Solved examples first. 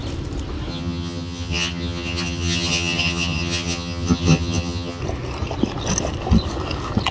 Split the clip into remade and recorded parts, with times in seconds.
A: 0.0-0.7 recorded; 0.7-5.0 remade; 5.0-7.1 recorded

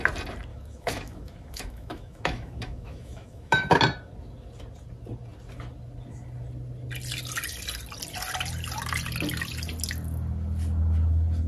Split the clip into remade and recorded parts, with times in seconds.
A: 0.0-0.5 recorded; 0.5-3.8 remade; 3.8-11.5 recorded

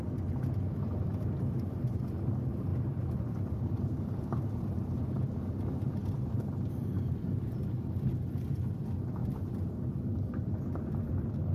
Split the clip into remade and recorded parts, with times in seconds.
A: 0.0-1.1 recorded; 1.1-2.0 remade; 2.0-2.7 recorded; 2.7-7.5 remade; 7.5-9.2 recorded; 9.2-10.0 remade; 10.0-11.5 recorded

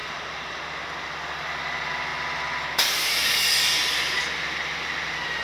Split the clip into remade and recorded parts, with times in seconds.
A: 0.0-0.6 remade; 0.6-5.4 recorded

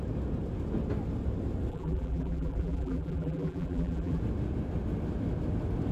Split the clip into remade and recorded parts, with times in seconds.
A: 0.0-1.7 recorded; 1.7-4.2 remade; 4.2-5.9 recorded